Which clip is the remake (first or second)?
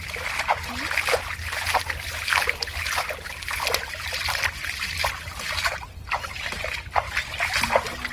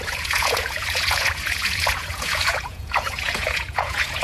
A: second